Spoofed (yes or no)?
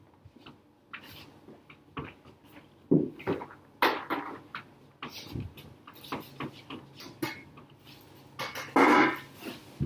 no